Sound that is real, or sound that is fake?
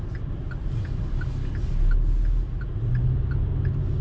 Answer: real